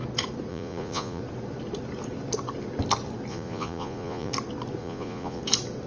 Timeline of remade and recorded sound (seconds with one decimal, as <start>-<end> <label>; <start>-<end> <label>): 0.0-0.5 recorded; 0.5-1.2 remade; 1.2-3.3 recorded; 3.3-4.3 remade; 4.3-4.8 recorded; 4.8-5.4 remade; 5.4-5.9 recorded

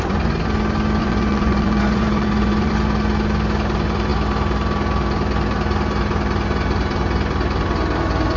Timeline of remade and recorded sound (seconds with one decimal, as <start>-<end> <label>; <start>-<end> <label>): 0.0-1.0 recorded; 1.0-2.7 remade; 2.7-8.4 recorded

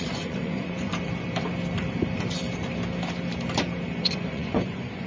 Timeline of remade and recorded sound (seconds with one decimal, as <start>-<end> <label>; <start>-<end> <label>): 0.0-0.9 remade; 0.9-4.0 recorded; 4.0-5.1 remade

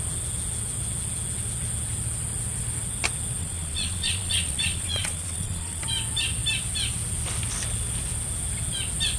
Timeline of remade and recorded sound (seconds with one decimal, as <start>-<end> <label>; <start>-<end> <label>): 0.0-3.4 recorded; 3.4-5.8 remade; 5.8-9.2 recorded

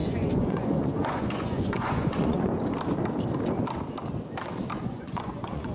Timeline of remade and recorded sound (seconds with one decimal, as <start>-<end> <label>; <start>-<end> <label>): 0.0-2.5 remade; 2.5-4.8 recorded; 4.8-5.7 remade

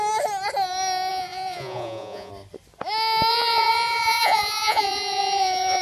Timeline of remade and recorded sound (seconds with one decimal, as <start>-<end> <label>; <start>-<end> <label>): 0.0-1.1 recorded; 1.1-2.3 remade; 2.3-3.3 recorded; 3.3-5.8 remade

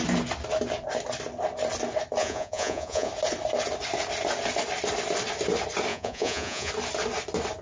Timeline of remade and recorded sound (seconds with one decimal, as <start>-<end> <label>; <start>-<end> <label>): 0.0-2.2 recorded; 2.2-3.1 remade; 3.1-5.9 recorded; 5.9-6.7 remade; 6.7-7.6 recorded

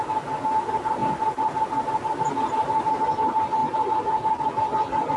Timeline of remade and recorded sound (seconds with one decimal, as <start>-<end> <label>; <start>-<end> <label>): 0.0-5.2 recorded